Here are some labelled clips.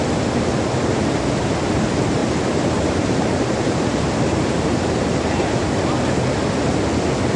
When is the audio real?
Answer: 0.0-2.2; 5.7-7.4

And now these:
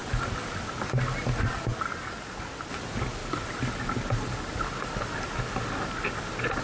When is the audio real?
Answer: 0.0-6.6

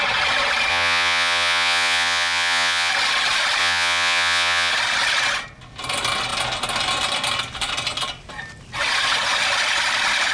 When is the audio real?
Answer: 0.0-0.7; 2.9-3.6; 4.7-10.3